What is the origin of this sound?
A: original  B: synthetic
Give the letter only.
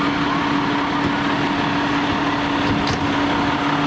A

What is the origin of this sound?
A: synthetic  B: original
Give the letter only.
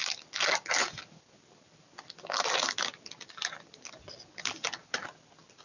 B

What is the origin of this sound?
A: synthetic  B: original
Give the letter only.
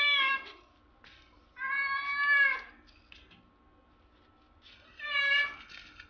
B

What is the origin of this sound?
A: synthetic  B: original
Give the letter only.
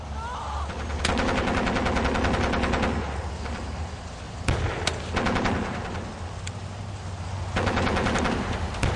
B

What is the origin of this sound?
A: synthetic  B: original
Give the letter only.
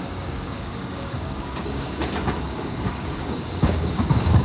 A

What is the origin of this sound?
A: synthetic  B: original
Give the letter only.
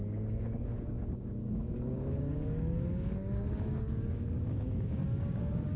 A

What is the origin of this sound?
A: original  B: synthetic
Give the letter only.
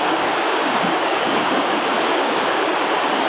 B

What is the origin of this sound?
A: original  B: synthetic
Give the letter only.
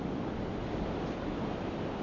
A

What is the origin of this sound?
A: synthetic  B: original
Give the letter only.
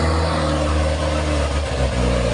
B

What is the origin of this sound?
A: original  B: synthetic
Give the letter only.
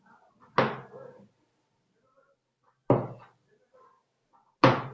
A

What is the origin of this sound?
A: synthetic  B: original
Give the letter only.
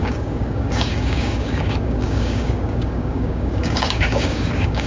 A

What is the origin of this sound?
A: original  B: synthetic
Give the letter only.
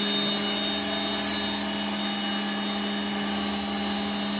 A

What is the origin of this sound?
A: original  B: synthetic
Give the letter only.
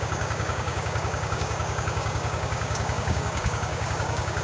B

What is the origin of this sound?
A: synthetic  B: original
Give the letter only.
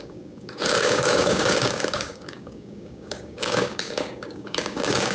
A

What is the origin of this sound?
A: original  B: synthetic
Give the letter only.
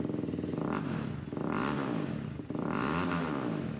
A